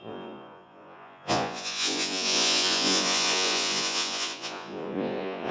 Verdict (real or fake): fake